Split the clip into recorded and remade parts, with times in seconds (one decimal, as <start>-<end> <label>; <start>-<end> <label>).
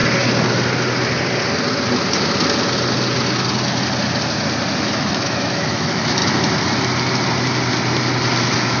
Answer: 0.0-4.8 recorded; 4.8-6.2 remade; 6.2-8.4 recorded; 8.4-8.8 remade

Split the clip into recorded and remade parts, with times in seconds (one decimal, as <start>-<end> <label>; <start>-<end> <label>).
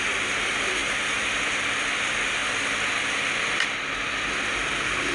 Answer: 0.0-5.1 recorded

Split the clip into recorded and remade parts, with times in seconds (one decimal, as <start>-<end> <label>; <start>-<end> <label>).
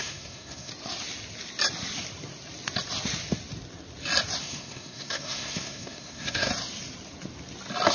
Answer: 0.0-0.7 remade; 0.7-4.4 recorded; 4.4-6.5 remade; 6.5-7.9 recorded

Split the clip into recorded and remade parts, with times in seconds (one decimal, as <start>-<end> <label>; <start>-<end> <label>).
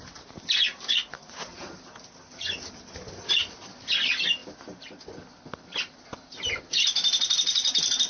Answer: 0.0-8.1 recorded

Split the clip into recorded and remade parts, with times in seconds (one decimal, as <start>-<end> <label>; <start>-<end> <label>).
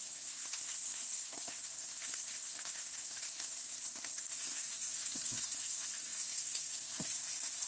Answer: 0.0-7.7 remade